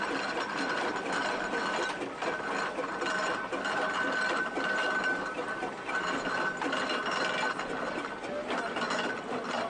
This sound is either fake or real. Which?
real